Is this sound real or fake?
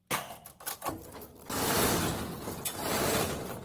real